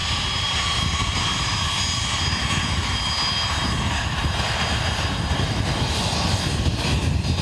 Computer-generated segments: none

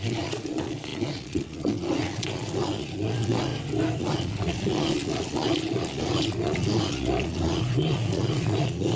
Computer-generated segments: 0.0-3.5; 4.0-9.0